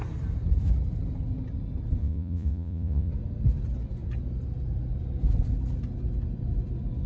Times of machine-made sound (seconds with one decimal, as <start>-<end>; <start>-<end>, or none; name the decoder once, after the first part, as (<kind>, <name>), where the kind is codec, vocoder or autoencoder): 2.0-3.1 (vocoder, Vocos)